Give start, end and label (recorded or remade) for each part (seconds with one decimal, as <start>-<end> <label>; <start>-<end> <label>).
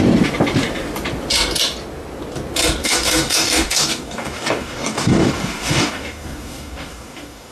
0.0-2.8 recorded; 2.8-7.5 remade